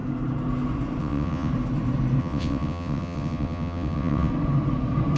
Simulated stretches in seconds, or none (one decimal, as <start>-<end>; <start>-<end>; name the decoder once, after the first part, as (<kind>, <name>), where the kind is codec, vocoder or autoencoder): 1.0-1.5 (vocoder, WaveNeXt); 2.2-4.3